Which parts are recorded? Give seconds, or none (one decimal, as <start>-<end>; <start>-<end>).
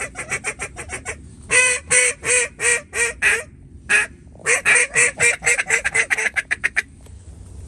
0.0-1.3; 2.1-4.4; 7.3-7.7